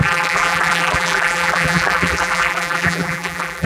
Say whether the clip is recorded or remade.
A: remade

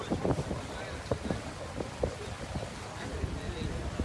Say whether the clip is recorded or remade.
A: remade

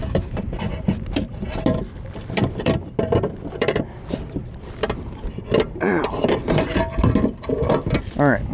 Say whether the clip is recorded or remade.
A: remade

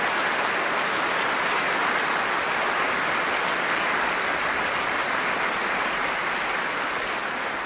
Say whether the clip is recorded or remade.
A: remade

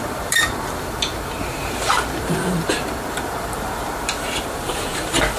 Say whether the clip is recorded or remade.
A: remade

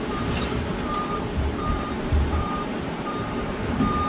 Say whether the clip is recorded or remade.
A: remade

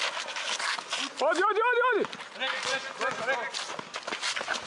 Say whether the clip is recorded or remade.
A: recorded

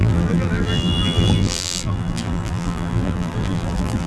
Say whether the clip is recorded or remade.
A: remade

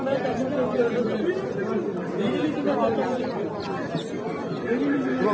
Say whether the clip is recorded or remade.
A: recorded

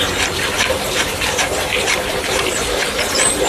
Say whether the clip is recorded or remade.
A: remade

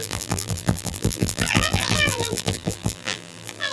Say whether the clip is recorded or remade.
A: remade